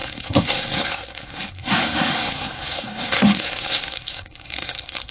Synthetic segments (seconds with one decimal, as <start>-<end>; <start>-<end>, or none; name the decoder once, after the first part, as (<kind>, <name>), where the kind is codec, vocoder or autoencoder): 0.0-5.1 (codec, SNAC)